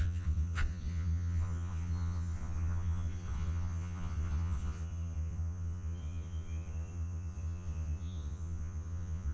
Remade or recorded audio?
remade